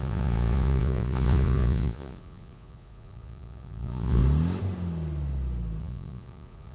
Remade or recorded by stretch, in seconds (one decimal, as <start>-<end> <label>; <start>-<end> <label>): 0.0-4.2 remade; 4.2-5.8 recorded; 5.8-6.7 remade